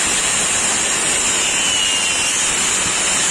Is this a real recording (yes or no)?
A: yes